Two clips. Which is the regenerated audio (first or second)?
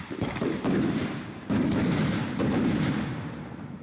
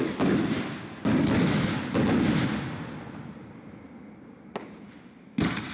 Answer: first